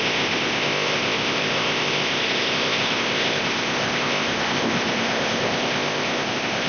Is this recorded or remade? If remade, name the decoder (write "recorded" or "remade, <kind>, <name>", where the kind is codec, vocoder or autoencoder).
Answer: remade, codec, ZipCodec